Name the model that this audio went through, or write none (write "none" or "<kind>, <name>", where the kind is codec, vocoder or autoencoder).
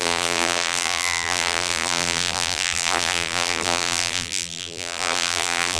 vocoder, BigVGAN v2